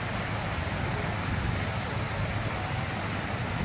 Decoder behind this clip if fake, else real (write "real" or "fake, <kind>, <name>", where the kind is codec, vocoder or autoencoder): real